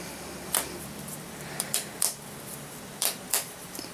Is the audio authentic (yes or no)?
no